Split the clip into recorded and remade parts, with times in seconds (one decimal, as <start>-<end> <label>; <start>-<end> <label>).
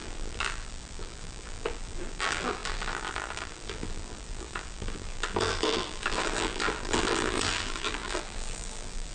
0.0-9.1 remade